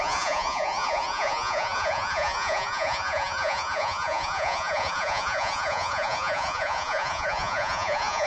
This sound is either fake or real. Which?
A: fake